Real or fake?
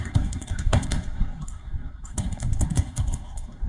fake